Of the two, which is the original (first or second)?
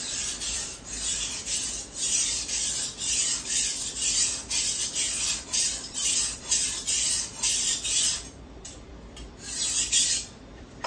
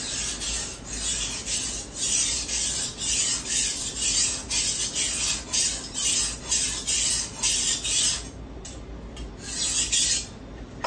second